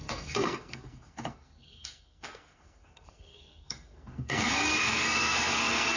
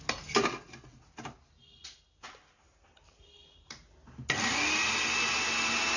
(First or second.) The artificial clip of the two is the first